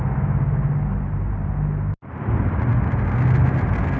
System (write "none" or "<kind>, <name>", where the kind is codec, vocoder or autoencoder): none